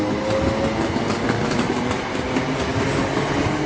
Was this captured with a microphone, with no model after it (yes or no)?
yes